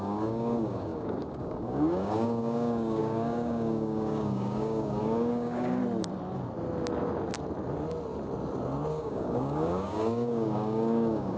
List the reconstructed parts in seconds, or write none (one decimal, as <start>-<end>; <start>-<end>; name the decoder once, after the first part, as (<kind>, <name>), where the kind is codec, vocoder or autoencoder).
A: 0.0-5.8 (codec, DAC); 8.9-11.4